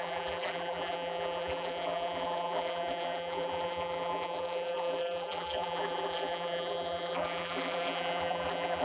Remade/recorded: remade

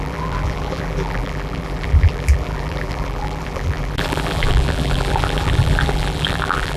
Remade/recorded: remade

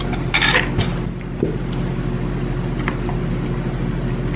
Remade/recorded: recorded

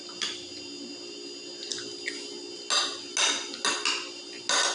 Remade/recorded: recorded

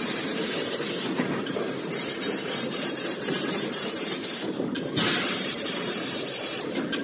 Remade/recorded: remade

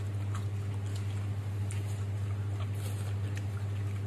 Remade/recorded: recorded